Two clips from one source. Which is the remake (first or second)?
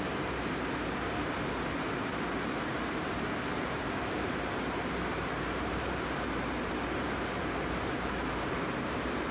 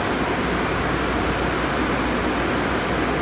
first